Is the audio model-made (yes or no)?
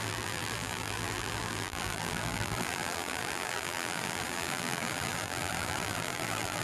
yes